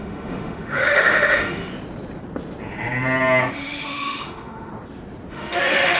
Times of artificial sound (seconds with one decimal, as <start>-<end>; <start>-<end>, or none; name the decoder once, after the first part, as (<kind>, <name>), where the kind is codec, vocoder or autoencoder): 0.0-1.7 (autoencoder, DAC-VAE); 3.5-4.7; 5.3-6.0